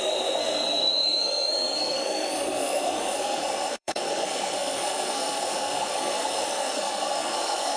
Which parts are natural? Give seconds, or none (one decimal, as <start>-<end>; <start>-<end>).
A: none